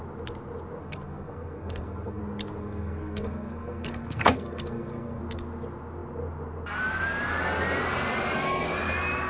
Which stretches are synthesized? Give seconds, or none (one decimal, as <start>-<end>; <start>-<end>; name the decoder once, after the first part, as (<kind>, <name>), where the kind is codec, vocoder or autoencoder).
0.8-2.2 (codec, SNAC); 2.6-5.2